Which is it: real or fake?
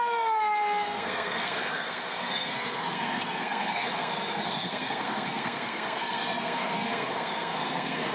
fake